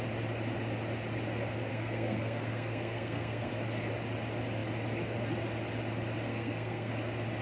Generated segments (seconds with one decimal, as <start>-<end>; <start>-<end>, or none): 1.7-3.5; 6.3-6.9